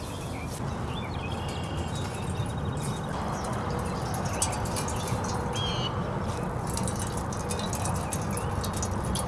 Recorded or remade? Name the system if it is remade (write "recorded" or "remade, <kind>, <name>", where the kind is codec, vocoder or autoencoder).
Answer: recorded